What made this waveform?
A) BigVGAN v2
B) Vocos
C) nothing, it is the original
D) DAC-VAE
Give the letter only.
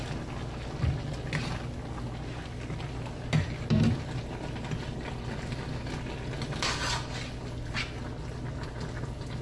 C